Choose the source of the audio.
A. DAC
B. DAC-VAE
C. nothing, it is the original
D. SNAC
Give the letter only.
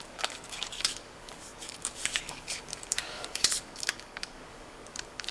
A